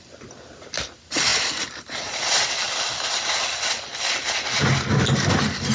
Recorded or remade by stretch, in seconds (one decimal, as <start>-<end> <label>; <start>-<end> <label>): 0.0-5.7 recorded